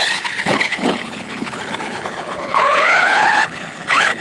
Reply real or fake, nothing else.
fake